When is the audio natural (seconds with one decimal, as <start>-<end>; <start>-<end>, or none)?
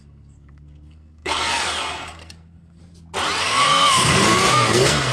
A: 2.8-3.4